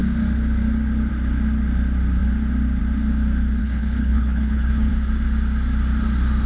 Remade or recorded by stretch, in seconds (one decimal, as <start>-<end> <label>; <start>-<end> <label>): 0.0-3.6 recorded; 3.6-4.9 remade; 4.9-6.5 recorded